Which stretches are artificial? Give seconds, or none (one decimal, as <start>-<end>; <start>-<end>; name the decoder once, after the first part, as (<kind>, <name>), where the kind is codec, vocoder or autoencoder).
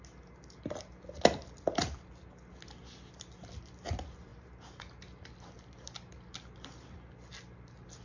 none